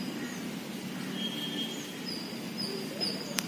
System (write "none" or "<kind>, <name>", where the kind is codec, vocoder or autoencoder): none